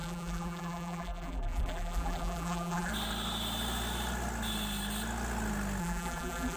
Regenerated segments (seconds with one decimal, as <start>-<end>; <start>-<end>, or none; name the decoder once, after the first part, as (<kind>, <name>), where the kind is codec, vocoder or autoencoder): 0.0-2.9 (vocoder, BigVGAN v2); 5.8-6.6

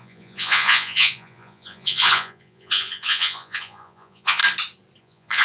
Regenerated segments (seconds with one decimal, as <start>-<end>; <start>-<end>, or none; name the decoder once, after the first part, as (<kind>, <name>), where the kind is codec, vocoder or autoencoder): 0.0-4.4 (vocoder, Vocos); 5.0-5.4

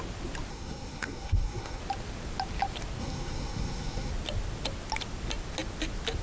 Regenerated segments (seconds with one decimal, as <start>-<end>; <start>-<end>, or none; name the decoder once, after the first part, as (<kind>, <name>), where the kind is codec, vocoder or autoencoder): 0.5-1.8 (codec, SNAC); 3.0-4.1

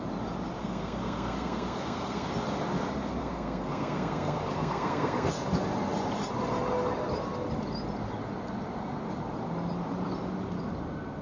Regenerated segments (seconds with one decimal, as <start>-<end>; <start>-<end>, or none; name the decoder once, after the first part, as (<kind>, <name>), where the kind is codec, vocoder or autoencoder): 0.6-2.3 (codec, SNAC); 3.2-5.3

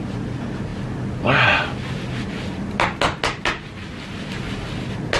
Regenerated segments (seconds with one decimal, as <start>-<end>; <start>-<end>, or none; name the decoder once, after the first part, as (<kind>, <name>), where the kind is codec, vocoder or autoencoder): none

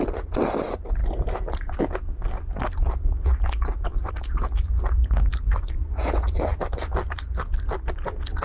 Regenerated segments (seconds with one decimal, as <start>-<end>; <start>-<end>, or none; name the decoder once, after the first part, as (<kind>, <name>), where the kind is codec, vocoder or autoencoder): 6.5-7.1 (vocoder, BigVGAN v2)

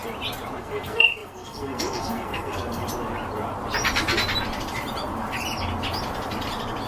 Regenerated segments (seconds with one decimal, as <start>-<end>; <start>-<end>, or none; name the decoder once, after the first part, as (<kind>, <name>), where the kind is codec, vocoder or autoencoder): 0.6-2.8 (codec, SNAC)

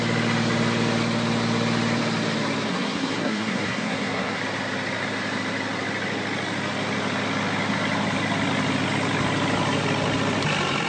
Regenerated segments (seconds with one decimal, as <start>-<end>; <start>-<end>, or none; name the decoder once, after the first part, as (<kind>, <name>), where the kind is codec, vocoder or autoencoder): 2.7-4.4 (codec, SNAC)